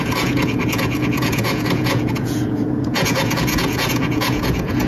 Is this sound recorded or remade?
remade